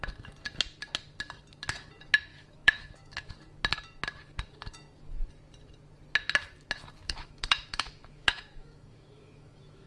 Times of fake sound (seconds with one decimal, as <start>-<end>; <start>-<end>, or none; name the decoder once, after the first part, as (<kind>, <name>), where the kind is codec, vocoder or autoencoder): 2.3-3.3 (autoencoder, DAC-VAE); 7.0-9.9